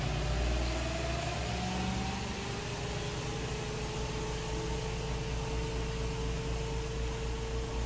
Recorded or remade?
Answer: recorded